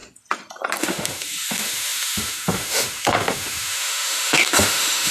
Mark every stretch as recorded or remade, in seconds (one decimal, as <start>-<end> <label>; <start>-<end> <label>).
0.0-0.8 recorded; 0.8-5.1 remade